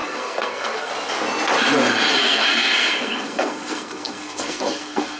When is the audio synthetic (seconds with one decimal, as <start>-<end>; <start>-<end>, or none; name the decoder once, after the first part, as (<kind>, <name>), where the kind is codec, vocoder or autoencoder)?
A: 0.0-0.9 (codec, SNAC); 2.2-5.2

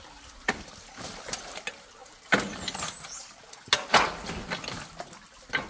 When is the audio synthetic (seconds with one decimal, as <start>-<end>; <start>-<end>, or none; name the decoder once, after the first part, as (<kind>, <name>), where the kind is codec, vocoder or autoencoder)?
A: none

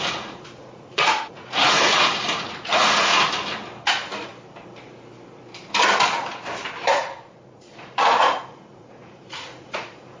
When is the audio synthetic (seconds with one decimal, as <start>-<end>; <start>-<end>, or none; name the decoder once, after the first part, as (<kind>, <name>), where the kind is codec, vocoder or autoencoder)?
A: 0.0-3.1 (vocoder, Vocos); 3.9-4.3; 6.9-10.2